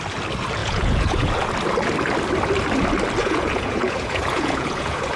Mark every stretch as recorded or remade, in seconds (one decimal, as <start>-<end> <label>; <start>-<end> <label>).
0.0-0.6 recorded; 0.6-1.3 remade; 1.3-3.2 recorded; 3.2-5.2 remade